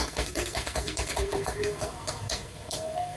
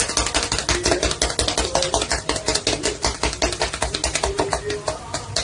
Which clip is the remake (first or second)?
first